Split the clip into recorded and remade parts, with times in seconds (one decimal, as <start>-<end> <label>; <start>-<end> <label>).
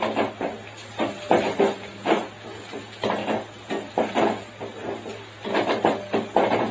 0.0-0.6 recorded; 0.6-1.6 remade; 1.6-4.8 recorded; 4.8-6.2 remade; 6.2-6.7 recorded